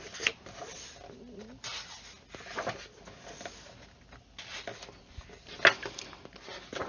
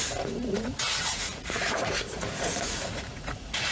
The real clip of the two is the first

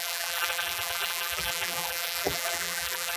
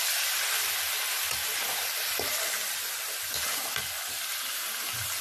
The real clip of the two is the second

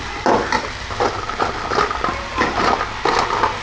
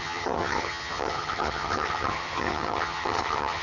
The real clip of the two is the first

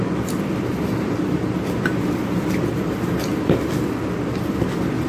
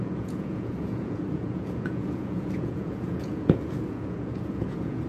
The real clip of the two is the first